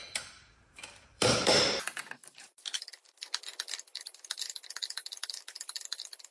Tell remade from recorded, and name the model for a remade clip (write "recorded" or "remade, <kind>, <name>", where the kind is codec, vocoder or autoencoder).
remade, vocoder, BigVGAN v2